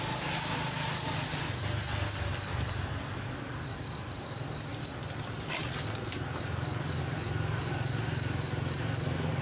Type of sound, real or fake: real